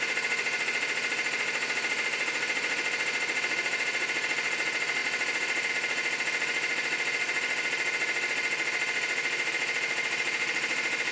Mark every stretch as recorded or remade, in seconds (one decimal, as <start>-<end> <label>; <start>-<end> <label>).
0.0-11.1 recorded